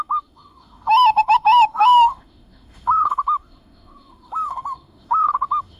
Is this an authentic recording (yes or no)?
no